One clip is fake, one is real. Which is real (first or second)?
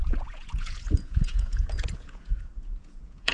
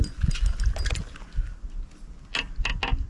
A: second